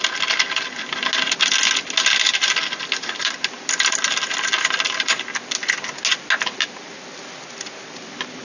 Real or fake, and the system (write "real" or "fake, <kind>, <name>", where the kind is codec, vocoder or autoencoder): real